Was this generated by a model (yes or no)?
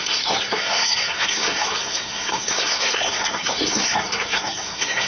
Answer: yes